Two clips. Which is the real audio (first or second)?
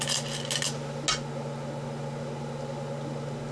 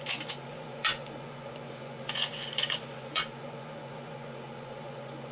first